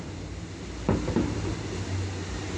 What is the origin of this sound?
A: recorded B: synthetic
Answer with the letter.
A